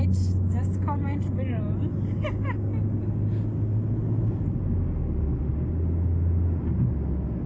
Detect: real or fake real